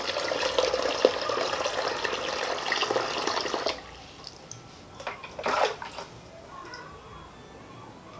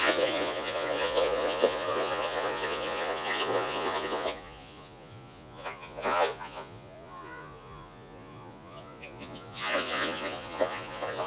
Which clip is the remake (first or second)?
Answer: second